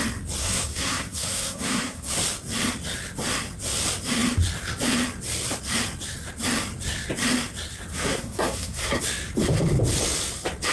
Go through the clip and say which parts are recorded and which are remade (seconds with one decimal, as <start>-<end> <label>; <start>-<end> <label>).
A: 0.0-0.4 recorded; 0.4-2.1 remade; 2.1-7.9 recorded; 7.9-9.0 remade; 9.0-10.7 recorded